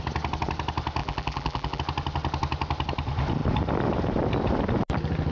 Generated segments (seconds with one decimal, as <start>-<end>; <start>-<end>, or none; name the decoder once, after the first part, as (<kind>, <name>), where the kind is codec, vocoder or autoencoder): 1.0-1.8 (vocoder, BigVGAN v2)